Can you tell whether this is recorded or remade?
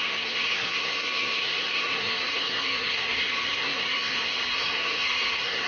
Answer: remade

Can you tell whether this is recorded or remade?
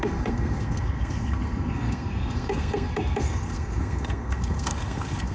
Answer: remade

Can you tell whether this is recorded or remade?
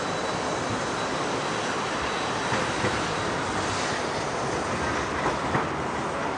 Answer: recorded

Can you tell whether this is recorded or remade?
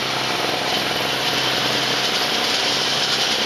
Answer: recorded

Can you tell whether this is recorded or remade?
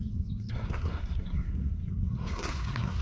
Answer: remade